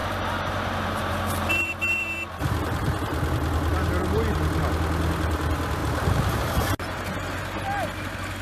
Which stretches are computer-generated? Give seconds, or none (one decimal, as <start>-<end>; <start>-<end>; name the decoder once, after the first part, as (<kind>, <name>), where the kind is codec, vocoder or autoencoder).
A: 0.0-2.3 (vocoder, BigVGAN v2); 5.8-7.4